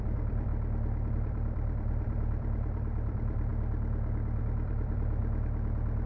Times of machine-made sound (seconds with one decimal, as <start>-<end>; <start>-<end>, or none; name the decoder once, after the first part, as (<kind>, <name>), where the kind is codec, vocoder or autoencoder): 0.0-0.5 (vocoder, BigVGAN v2); 1.1-3.5; 4.4-5.2